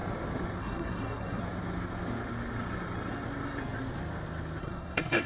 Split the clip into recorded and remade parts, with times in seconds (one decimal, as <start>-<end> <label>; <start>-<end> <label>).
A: 0.0-0.6 recorded; 0.6-1.4 remade; 1.4-4.6 recorded; 4.6-5.3 remade